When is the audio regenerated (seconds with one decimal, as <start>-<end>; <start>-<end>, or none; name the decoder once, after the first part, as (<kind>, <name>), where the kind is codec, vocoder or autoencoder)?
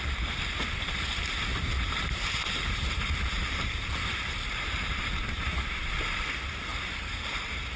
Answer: 1.5-5.9 (vocoder, BigVGAN v2); 6.7-7.3